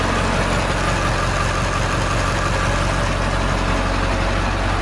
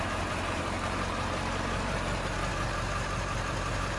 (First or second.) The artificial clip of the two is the second